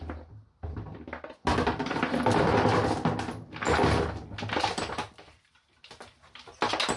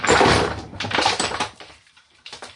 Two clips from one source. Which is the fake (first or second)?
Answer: second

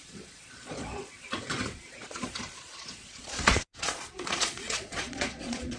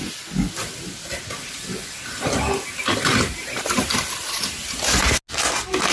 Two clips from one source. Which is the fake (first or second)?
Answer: first